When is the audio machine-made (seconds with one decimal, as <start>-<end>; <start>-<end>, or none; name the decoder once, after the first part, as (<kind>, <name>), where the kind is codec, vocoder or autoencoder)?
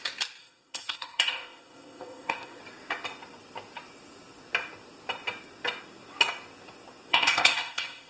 0.4-2.6 (codec, ZipCodec); 7.1-8.1